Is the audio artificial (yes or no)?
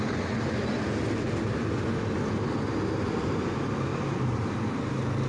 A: no